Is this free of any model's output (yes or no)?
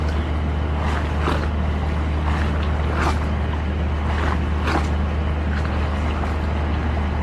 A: yes